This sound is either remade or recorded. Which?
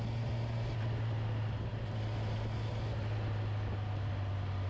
recorded